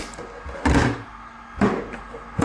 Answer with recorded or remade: recorded